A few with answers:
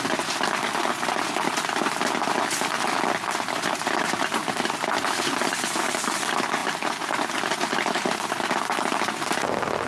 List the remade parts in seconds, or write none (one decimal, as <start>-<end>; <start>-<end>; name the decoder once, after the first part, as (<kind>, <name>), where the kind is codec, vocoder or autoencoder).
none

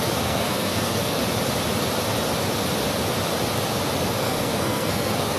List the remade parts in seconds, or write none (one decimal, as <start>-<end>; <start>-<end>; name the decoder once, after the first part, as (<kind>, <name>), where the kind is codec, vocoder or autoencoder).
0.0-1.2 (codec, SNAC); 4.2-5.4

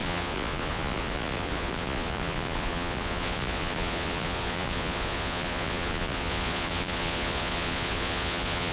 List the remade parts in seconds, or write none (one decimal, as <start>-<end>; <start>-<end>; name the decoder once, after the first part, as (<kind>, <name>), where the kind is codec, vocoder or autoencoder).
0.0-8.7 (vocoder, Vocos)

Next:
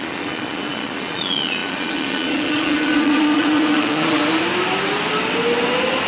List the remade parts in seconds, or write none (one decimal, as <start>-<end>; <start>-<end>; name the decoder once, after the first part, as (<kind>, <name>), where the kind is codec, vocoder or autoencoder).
0.0-4.2 (vocoder, Vocos)